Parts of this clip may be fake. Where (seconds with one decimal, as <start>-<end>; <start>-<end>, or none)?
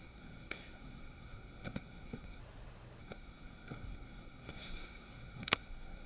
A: 0.0-2.4; 3.0-6.1